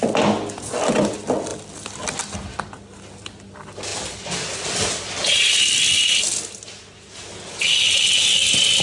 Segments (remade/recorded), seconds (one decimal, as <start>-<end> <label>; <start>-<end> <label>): 0.0-1.5 recorded; 1.5-2.2 remade; 2.2-8.8 recorded